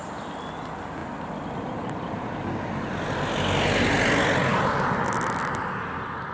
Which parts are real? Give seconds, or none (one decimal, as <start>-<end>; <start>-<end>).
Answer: 0.0-6.3